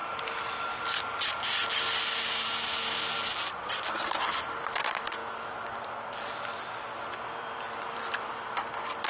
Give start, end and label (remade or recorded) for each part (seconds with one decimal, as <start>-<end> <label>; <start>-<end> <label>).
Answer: 0.0-2.0 recorded; 2.0-5.2 remade; 5.2-5.7 recorded; 5.7-9.1 remade